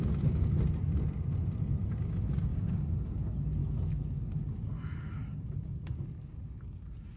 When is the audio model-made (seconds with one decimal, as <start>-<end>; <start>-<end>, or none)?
none